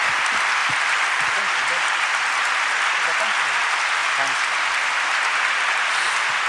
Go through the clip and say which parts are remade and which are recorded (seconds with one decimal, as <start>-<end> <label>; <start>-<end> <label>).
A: 0.0-6.5 recorded